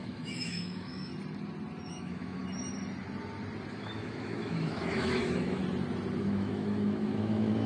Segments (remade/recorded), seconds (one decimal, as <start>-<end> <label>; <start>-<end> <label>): 0.0-1.1 remade; 1.1-1.9 recorded; 1.9-2.4 remade; 2.4-3.7 recorded; 3.7-5.6 remade; 5.6-6.2 recorded; 6.2-7.7 remade